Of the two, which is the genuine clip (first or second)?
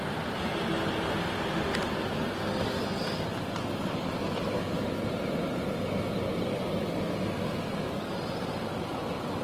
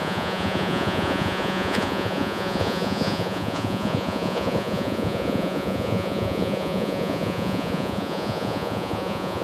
first